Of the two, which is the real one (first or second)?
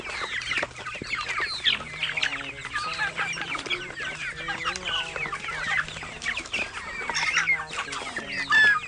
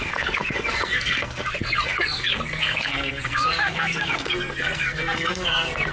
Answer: first